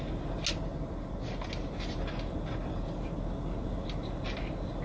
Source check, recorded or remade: recorded